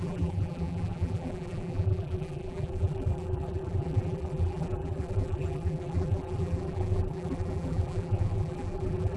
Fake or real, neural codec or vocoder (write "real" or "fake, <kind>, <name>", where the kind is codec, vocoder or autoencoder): fake, vocoder, BigVGAN v2